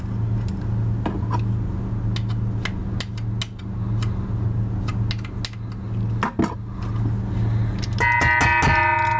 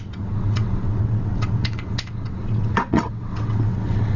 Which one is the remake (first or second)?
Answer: second